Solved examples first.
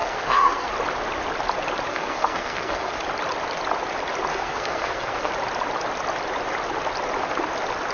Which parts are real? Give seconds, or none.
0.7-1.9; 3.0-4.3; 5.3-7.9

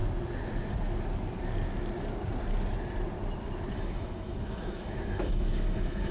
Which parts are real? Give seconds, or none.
0.0-3.7

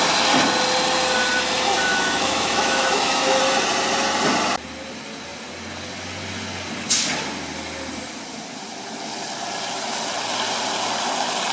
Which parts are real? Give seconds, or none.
0.0-1.9; 3.4-11.5

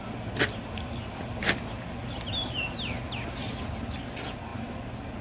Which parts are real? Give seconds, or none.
0.0-5.2

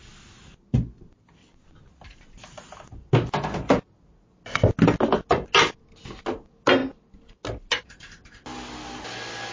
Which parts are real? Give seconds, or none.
0.0-9.5